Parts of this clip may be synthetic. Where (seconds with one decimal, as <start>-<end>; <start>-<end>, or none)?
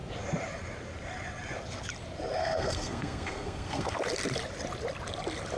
2.4-4.0